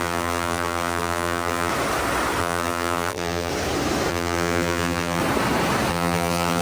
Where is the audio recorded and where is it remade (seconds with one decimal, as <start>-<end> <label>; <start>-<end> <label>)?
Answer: 0.0-1.7 remade; 1.7-2.4 recorded; 2.4-3.5 remade; 3.5-4.1 recorded; 4.1-5.2 remade; 5.2-5.9 recorded; 5.9-6.6 remade